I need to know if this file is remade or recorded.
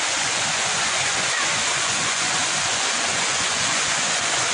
remade